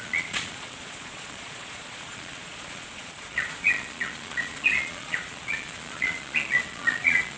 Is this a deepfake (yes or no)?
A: yes